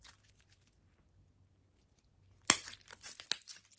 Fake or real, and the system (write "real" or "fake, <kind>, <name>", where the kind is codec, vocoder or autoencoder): real